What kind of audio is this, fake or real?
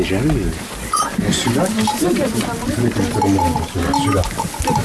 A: real